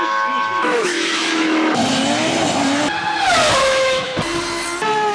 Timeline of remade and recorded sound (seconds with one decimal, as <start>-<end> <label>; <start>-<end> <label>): 0.0-1.8 remade; 1.8-3.6 recorded; 3.6-4.1 remade; 4.1-5.1 recorded